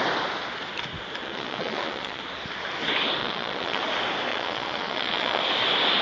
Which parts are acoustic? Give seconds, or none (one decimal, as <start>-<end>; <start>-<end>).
0.0-1.2; 2.2-3.2; 3.8-4.3; 5.4-6.0